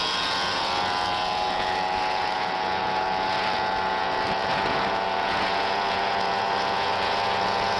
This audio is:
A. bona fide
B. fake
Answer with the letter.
B